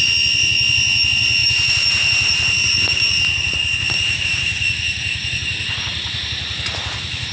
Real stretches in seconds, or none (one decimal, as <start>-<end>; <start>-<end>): 0.0-1.4; 4.2-5.9; 6.8-7.3